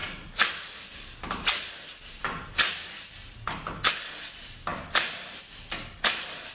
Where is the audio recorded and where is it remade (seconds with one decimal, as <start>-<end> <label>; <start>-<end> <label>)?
0.0-3.9 remade; 3.9-4.7 recorded; 4.7-5.4 remade; 5.4-6.5 recorded